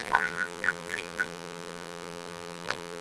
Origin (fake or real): fake